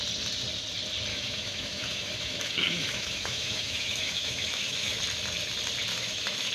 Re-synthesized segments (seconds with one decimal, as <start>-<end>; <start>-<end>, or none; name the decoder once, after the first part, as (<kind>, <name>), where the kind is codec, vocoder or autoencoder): 1.1-5.0 (autoencoder, DAC-VAE); 5.9-6.5